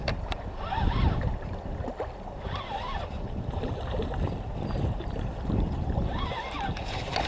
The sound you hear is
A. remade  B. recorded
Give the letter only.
A